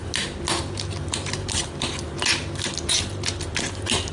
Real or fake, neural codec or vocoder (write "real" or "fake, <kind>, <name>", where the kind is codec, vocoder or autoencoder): real